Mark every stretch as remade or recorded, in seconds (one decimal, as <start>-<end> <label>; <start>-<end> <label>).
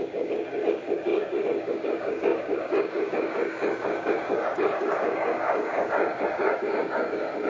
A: 0.0-7.5 remade